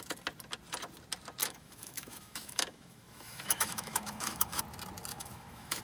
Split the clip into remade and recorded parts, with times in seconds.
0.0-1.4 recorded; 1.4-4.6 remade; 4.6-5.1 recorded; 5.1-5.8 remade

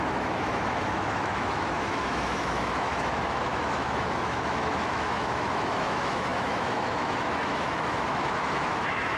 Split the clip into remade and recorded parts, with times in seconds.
0.0-9.2 remade